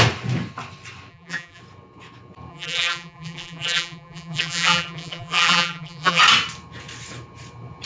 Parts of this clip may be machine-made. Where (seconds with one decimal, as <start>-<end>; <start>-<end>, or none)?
1.1-1.6; 2.5-6.2

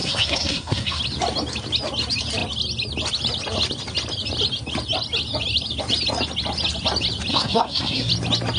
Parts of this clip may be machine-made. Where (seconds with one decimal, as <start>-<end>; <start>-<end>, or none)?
0.0-1.0; 7.3-8.1

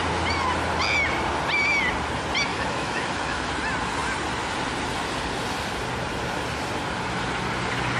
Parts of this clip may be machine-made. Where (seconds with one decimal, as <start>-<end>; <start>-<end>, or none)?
2.5-3.5

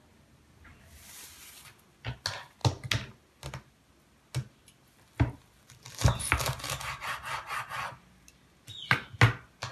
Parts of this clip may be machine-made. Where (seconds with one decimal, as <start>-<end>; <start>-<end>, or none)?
none

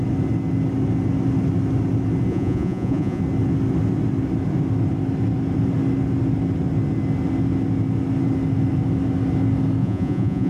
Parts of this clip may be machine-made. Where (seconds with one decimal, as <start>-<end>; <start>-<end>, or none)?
2.3-3.2; 9.8-10.5

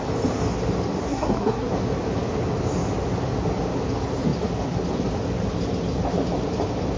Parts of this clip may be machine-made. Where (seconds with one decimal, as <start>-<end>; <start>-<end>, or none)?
1.1-1.7